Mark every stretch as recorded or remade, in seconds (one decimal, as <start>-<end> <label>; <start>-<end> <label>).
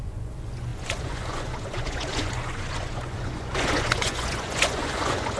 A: 0.0-5.4 remade